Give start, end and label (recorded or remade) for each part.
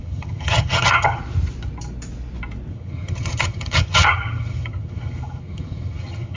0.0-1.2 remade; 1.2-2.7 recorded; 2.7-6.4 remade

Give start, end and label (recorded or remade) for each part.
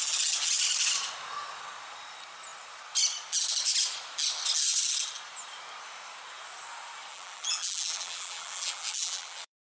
0.0-7.1 recorded; 7.1-9.8 remade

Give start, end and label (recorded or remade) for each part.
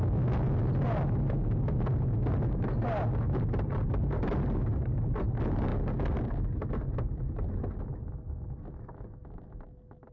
0.0-10.1 recorded